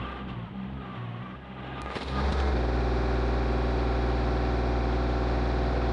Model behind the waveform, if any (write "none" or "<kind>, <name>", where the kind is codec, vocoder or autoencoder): none